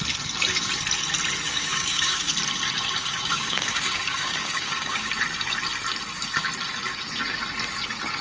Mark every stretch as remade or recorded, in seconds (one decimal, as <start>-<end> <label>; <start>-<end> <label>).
0.0-1.5 recorded; 1.5-2.3 remade; 2.3-3.0 recorded; 3.0-5.1 remade; 5.1-8.2 recorded